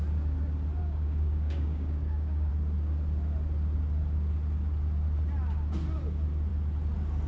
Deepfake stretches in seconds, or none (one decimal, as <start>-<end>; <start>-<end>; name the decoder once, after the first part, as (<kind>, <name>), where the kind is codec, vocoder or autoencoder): 0.8-2.5 (codec, DAC)